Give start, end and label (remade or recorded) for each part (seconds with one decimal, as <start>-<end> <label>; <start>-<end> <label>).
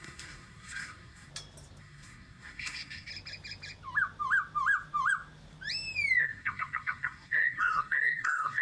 0.0-1.3 remade; 1.3-1.8 recorded; 1.8-3.1 remade; 3.1-6.2 recorded; 6.2-8.6 remade